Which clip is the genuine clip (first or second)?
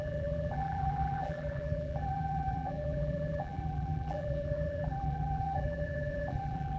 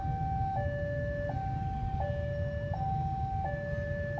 second